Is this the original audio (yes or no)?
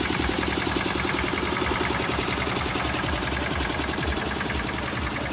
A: yes